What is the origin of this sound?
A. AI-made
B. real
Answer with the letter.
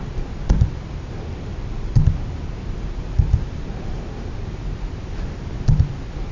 A